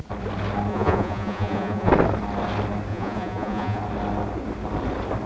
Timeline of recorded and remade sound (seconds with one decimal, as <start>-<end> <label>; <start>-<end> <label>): 0.0-0.7 recorded; 0.7-1.9 remade; 1.9-2.9 recorded; 2.9-3.8 remade; 3.8-5.3 recorded